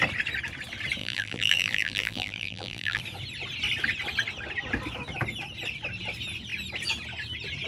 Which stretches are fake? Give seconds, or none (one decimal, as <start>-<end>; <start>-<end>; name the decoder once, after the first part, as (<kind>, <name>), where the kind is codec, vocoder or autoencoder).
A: 1.0-3.0 (vocoder, BigVGAN v2)